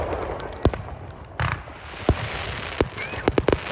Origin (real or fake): real